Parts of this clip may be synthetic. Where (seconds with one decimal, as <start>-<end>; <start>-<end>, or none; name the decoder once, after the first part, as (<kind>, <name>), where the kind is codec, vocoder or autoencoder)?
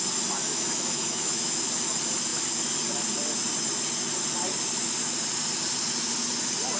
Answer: 0.4-1.7 (autoencoder, DAC-VAE)